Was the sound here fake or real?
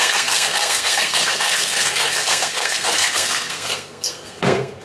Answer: fake